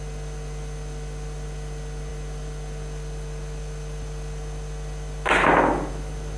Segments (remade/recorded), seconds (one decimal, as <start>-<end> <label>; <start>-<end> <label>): 0.0-6.4 recorded